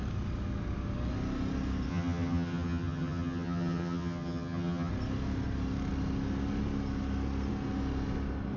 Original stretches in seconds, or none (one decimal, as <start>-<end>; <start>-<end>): 0.0-1.9; 4.9-8.6